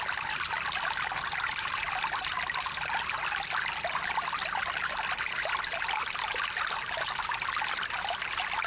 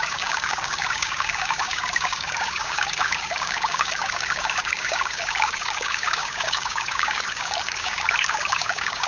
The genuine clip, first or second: first